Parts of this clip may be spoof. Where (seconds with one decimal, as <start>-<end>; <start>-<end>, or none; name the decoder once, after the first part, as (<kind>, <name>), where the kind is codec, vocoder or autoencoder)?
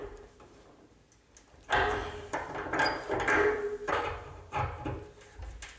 0.0-0.9 (vocoder, BigVGAN v2); 2.0-4.8